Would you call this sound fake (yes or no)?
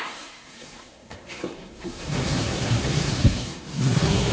yes